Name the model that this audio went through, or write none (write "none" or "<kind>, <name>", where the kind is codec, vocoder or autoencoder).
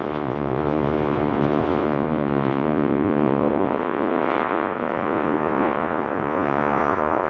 vocoder, Vocos